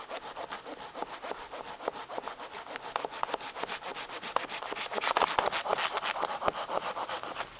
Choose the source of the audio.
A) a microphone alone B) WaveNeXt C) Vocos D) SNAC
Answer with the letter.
A